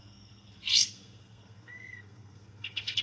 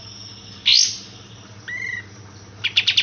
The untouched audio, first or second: second